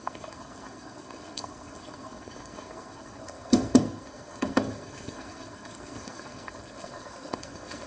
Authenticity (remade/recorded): remade